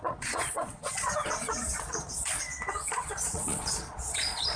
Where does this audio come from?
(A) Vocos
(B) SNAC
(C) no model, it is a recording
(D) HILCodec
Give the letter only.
A